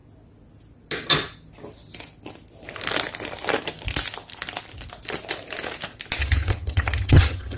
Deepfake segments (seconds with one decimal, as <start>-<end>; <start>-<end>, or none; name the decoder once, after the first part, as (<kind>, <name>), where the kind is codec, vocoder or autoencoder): 6.2-7.6 (vocoder, HiFi-GAN)